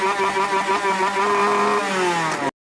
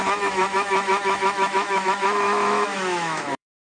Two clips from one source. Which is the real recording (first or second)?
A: first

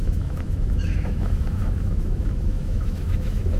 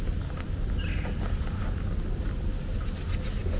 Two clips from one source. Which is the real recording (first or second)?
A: second